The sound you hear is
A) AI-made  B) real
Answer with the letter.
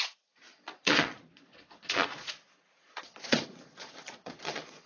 A